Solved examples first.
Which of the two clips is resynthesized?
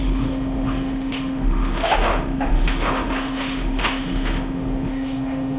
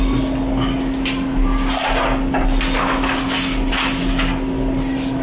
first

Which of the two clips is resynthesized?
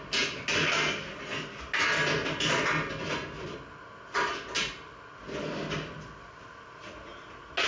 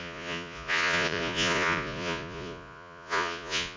second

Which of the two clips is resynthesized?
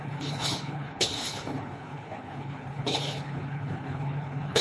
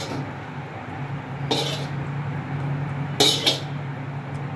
first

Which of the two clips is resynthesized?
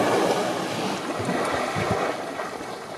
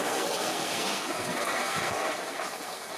second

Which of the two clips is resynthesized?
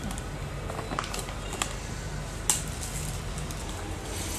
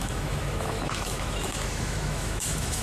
second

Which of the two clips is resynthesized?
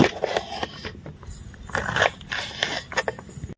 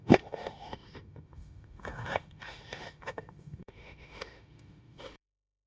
second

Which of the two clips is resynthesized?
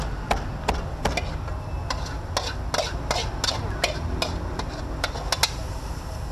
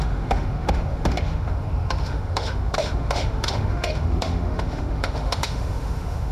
second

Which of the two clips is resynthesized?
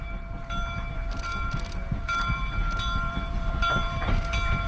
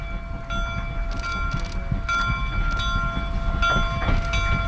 first